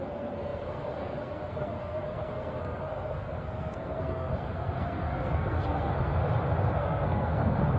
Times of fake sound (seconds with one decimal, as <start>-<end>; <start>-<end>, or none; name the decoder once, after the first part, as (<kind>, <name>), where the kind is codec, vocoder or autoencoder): 0.0-6.2 (codec, SNAC); 6.7-7.8